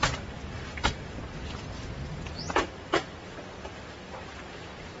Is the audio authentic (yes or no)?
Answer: no